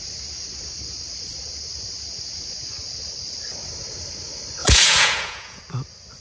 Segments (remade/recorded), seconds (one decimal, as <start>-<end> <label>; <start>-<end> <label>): 0.0-4.6 recorded; 4.6-5.6 remade; 5.6-6.2 recorded